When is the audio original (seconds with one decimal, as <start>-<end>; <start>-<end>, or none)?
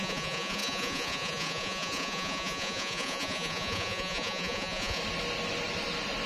5.0-6.3